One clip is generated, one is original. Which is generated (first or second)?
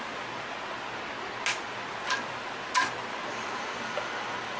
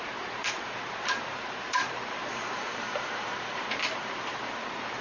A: second